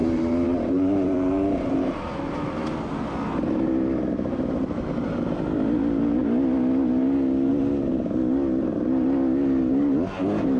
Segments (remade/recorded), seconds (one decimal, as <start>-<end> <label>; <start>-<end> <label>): 0.0-2.2 remade; 2.2-10.6 recorded